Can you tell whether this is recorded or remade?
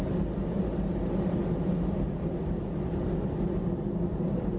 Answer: recorded